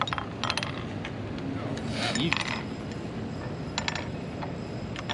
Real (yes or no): yes